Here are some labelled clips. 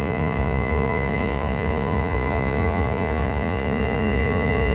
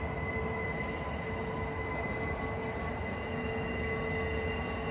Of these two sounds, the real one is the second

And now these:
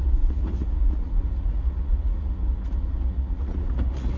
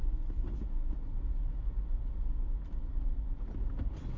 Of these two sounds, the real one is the second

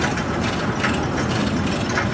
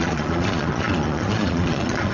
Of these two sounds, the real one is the first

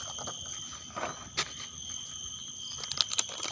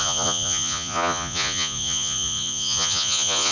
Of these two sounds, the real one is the first